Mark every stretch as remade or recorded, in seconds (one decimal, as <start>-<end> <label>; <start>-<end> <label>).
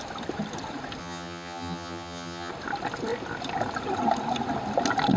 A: 0.0-1.0 recorded; 1.0-2.5 remade; 2.5-5.2 recorded